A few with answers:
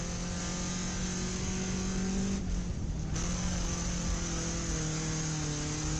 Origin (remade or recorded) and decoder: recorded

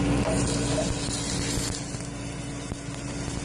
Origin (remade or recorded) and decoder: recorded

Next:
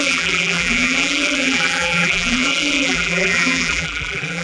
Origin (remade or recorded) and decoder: remade, vocoder, BigVGAN v2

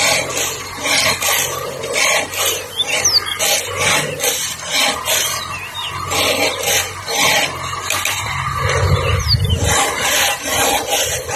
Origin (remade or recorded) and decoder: recorded